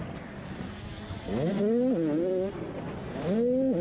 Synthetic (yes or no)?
no